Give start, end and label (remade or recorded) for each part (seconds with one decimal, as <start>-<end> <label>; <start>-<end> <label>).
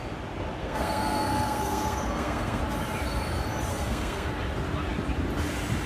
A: 0.0-0.6 recorded; 0.6-2.6 remade; 2.6-3.7 recorded; 3.7-4.3 remade; 4.3-5.9 recorded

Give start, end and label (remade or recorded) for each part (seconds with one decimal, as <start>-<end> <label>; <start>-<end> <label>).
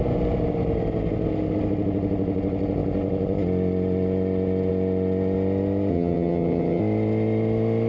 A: 0.0-5.9 recorded; 5.9-6.8 remade; 6.8-7.9 recorded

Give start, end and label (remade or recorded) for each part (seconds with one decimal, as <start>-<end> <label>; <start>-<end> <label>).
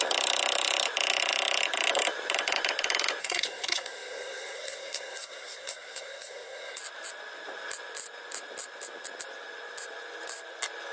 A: 0.0-3.2 recorded; 3.2-6.8 remade; 6.8-10.9 recorded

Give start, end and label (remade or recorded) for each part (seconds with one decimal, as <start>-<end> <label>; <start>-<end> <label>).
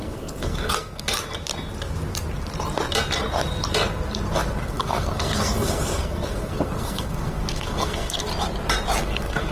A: 0.0-1.2 remade; 1.2-4.6 recorded; 4.6-8.3 remade; 8.3-9.0 recorded; 9.0-9.5 remade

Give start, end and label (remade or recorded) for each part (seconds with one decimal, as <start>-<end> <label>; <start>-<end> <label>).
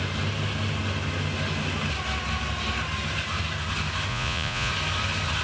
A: 0.0-4.1 recorded; 4.1-4.7 remade; 4.7-5.4 recorded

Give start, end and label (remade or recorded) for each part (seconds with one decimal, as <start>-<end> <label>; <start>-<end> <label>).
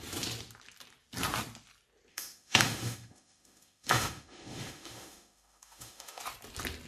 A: 0.0-2.1 recorded; 2.1-6.2 remade; 6.2-6.9 recorded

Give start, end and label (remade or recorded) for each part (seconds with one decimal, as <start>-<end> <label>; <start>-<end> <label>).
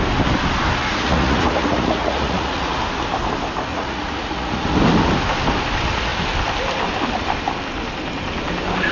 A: 0.0-0.8 recorded; 0.8-2.8 remade; 2.8-3.7 recorded; 3.7-4.6 remade; 4.6-8.9 recorded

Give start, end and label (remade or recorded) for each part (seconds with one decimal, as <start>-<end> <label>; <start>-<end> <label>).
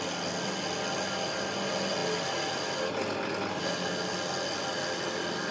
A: 0.0-5.5 recorded